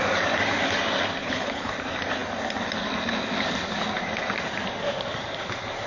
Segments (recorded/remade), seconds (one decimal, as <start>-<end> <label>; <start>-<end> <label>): 0.0-1.2 recorded; 1.2-1.7 remade; 1.7-5.9 recorded